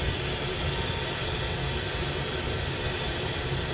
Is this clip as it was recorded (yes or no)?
yes